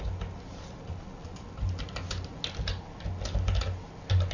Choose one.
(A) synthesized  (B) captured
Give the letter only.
B